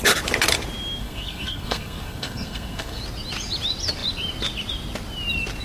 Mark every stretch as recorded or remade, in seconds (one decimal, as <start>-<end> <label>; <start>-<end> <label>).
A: 0.0-1.0 recorded; 1.0-3.0 remade; 3.0-5.6 recorded